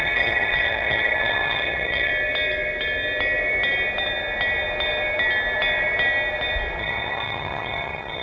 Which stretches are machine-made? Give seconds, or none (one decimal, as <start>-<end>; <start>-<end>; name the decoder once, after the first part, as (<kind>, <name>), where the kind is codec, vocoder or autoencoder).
0.0-2.1 (vocoder, HiFi-GAN); 6.8-8.2